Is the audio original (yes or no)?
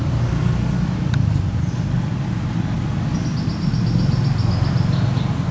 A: yes